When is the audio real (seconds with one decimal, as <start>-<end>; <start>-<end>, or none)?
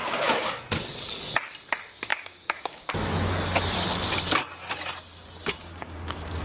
0.6-2.1; 2.9-5.6